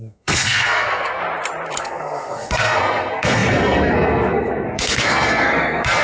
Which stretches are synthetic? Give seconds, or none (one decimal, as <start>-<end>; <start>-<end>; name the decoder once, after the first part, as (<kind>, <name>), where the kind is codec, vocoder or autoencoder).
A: 0.0-1.2 (codec, SNAC); 1.8-6.0